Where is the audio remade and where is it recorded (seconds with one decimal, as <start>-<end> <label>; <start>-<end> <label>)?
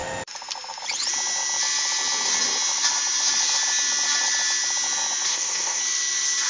0.0-5.3 recorded; 5.3-5.8 remade; 5.8-6.5 recorded